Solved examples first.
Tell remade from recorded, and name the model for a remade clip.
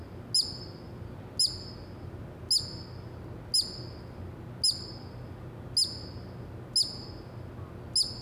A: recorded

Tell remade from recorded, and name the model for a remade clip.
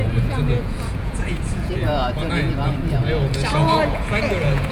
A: remade, vocoder, Vocos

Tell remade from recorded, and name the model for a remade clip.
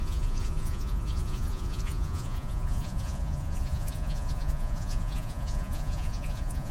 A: remade, vocoder, Vocos